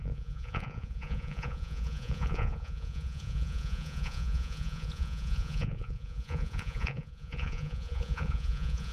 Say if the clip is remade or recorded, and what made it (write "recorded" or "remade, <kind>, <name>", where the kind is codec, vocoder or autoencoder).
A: remade, vocoder, Vocos